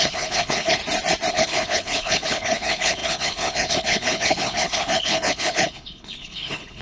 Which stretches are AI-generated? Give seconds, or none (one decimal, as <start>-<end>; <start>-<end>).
0.0-0.8; 1.3-6.8